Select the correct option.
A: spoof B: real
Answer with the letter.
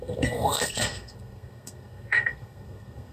A